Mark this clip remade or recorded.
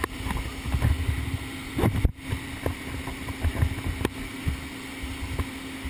recorded